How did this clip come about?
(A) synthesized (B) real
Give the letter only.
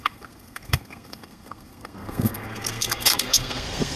A